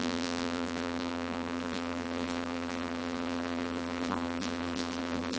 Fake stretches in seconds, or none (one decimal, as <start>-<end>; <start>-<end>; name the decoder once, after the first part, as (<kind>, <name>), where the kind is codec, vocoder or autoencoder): 0.0-5.4 (vocoder, BigVGAN v2)